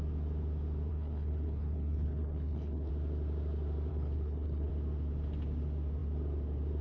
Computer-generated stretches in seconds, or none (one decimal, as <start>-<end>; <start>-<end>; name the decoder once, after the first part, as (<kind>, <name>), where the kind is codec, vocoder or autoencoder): 0.9-2.9 (codec, HILCodec); 3.9-4.7